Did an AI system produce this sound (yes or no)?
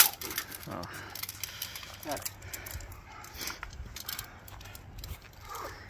no